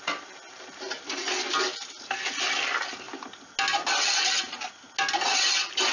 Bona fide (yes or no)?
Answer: yes